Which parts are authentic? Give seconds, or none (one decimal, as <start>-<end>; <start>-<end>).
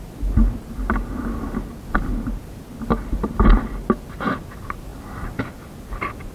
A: 0.0-6.3